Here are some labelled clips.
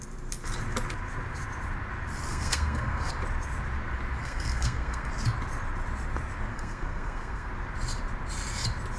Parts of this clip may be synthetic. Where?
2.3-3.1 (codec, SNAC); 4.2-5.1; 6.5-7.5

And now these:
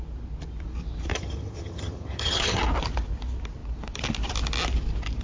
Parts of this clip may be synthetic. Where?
1.1-2.6 (vocoder, HiFi-GAN)

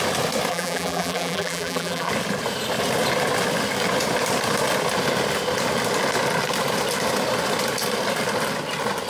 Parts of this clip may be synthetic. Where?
0.5-2.1 (vocoder, BigVGAN v2)

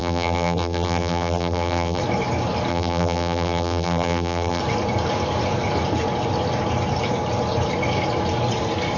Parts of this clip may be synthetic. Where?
0.0-2.0 (vocoder, BigVGAN v2); 2.7-4.6

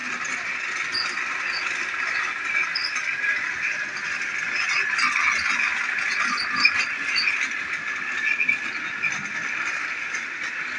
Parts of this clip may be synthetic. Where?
0.0-0.5 (vocoder, BigVGAN v2)

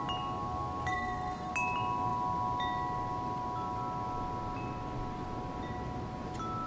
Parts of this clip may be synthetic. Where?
0.9-1.5 (codec, SNAC)

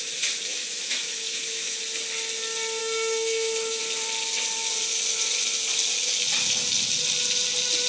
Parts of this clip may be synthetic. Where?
0.5-1.8 (autoencoder, DAC-VAE); 2.8-3.8